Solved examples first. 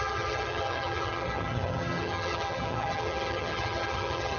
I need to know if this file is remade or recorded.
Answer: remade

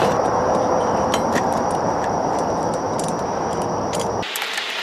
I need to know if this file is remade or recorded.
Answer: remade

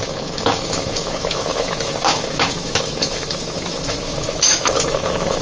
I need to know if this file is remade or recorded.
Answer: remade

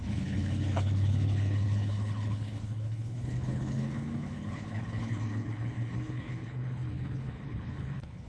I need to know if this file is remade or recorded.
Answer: remade